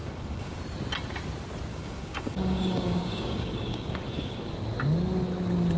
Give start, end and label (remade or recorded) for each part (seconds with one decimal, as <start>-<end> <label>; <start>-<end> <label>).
0.0-0.6 remade; 0.6-1.7 recorded; 1.7-4.5 remade; 4.5-5.8 recorded